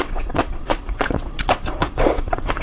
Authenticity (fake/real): fake